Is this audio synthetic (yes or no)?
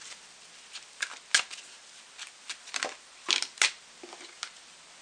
no